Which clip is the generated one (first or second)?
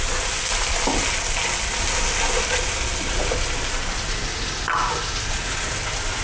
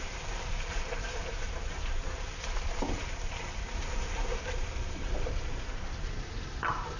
second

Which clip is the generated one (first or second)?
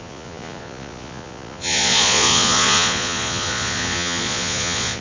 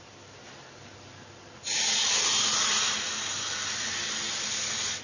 first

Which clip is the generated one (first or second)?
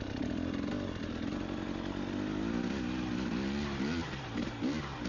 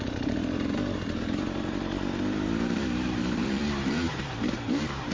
second